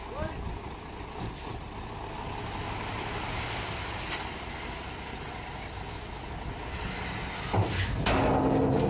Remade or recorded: recorded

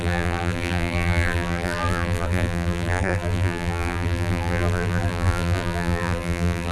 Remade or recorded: remade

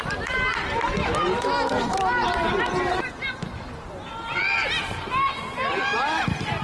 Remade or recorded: recorded